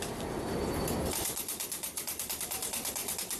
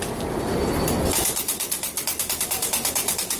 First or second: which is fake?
first